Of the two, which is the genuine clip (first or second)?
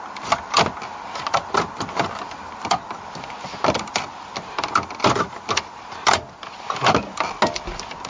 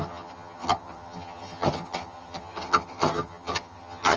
first